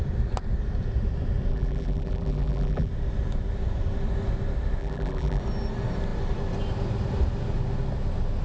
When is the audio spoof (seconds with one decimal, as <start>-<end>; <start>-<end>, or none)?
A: 1.5-2.9; 4.8-5.4